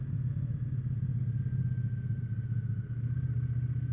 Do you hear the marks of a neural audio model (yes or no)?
no